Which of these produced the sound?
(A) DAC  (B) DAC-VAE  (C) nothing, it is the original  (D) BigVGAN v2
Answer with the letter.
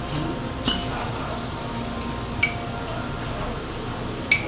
C